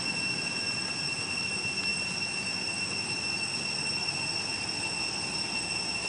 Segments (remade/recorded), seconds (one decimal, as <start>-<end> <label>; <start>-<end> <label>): 0.0-6.1 recorded